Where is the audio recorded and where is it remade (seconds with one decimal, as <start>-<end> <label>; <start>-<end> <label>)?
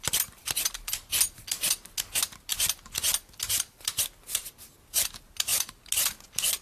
0.0-6.6 recorded